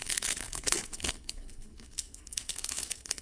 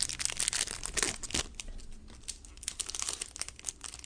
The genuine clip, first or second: second